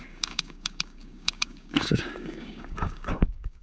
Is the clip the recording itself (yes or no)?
no